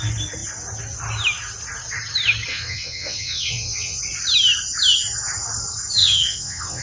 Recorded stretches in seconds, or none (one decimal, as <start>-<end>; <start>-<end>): 0.0-2.5; 4.0-6.0